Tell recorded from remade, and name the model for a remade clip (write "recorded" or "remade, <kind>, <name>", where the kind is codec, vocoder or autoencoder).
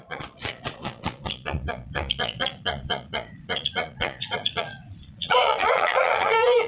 remade, vocoder, Vocos